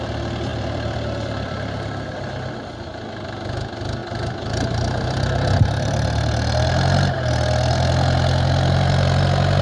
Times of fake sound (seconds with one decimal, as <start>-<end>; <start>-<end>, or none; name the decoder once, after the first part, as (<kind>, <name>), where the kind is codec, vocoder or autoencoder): 0.5-2.5 (vocoder, BigVGAN v2); 4.0-9.2